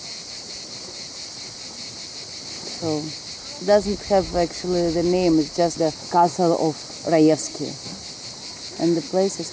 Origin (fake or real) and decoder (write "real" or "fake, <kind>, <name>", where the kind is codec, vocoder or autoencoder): real